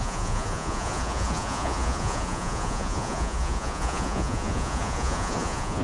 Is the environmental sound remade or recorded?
remade